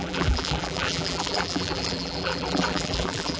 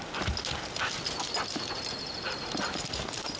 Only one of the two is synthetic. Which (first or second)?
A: first